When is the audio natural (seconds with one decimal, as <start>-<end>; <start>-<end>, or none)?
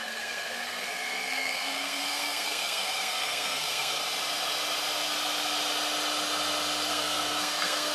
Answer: 4.0-6.9